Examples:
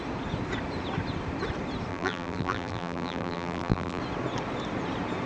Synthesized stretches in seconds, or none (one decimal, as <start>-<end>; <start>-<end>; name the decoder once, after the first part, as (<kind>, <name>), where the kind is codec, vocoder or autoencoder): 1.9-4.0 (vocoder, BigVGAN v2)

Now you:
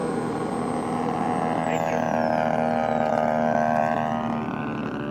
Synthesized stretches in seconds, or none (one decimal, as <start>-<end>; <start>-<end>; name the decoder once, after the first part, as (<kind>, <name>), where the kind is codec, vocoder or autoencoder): 3.8-4.6 (vocoder, BigVGAN v2)

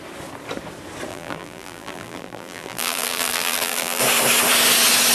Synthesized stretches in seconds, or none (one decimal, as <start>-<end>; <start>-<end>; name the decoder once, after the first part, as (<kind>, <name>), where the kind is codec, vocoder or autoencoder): 1.1-4.0 (vocoder, BigVGAN v2)

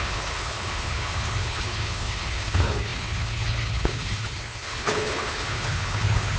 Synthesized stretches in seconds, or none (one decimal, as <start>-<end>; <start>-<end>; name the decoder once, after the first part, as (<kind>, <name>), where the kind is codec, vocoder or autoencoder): 0.0-6.4 (codec, HILCodec)

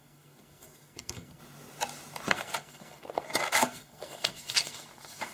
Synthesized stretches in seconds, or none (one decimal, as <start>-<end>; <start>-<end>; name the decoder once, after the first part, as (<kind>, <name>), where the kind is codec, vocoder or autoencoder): 0.0-1.4 (codec, SNAC); 2.3-5.3

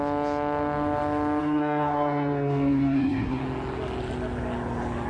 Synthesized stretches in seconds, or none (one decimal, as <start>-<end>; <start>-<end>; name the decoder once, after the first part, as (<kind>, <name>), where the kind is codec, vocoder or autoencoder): 1.4-3.4 (codec, SNAC)